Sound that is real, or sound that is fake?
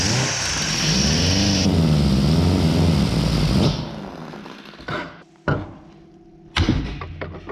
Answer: real